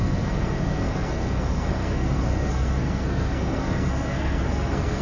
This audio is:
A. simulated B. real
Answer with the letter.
A